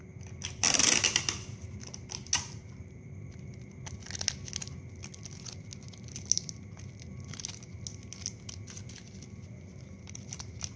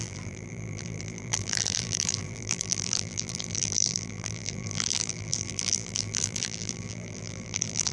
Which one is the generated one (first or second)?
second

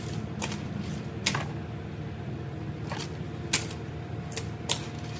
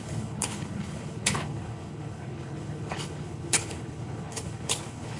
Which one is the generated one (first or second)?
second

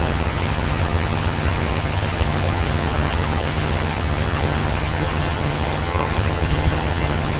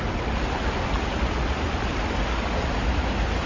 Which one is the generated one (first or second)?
first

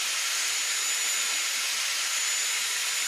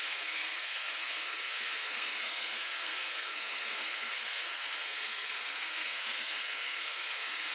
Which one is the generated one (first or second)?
second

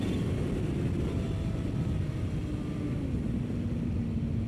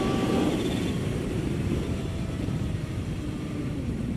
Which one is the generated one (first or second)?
second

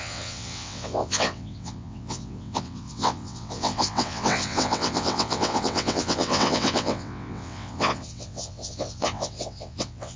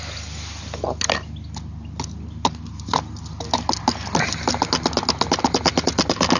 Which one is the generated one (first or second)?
first